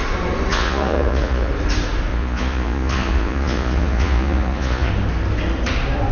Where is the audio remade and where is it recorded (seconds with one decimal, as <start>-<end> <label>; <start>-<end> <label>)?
0.0-0.5 recorded; 0.5-1.5 remade; 1.5-2.1 recorded; 2.1-4.9 remade; 4.9-6.1 recorded